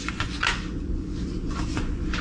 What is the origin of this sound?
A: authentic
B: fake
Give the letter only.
B